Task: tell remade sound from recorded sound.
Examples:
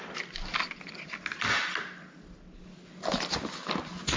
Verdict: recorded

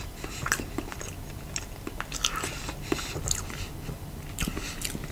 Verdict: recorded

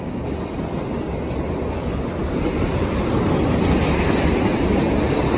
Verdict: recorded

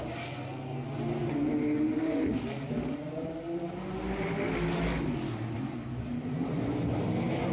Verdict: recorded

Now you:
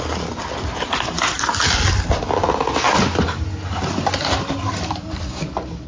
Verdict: recorded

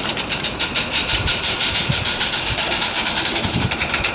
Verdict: remade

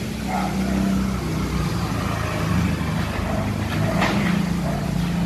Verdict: recorded